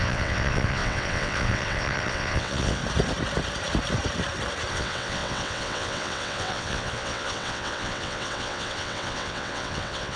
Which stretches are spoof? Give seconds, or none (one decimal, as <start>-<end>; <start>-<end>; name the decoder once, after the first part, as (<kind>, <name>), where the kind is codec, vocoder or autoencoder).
0.0-2.8 (vocoder, WaveNeXt); 4.7-10.2